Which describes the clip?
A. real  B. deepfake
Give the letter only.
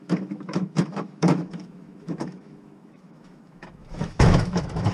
B